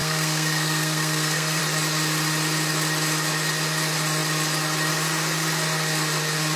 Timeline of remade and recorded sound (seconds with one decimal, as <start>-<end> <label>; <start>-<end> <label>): 0.0-1.6 remade; 1.6-6.6 recorded